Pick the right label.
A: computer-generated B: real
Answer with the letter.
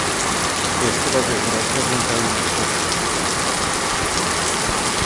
B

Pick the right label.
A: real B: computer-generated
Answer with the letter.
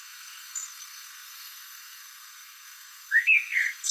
B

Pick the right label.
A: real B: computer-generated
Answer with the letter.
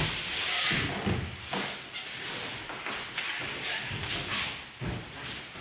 A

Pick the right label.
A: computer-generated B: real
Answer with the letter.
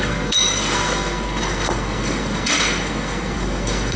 A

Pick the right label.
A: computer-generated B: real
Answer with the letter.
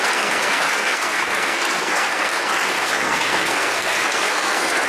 A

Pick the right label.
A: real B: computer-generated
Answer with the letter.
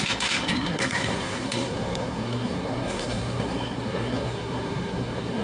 B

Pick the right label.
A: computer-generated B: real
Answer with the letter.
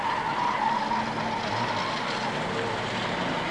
B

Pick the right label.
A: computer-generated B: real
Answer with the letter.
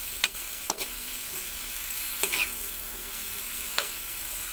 A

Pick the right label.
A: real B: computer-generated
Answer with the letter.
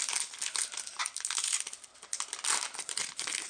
A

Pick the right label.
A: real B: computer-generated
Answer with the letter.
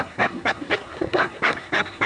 B